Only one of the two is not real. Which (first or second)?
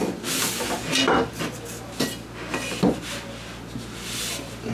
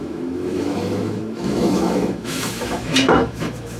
second